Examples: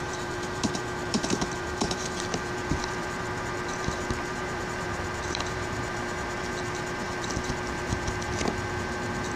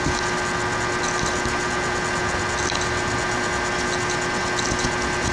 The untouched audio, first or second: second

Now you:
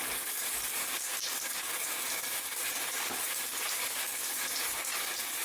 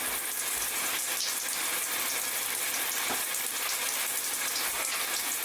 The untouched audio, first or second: second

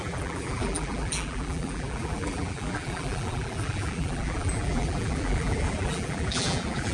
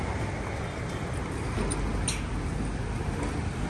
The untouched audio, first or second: second